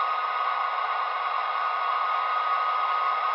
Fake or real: real